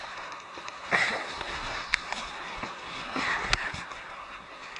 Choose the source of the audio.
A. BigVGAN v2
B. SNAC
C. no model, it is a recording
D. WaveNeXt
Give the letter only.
B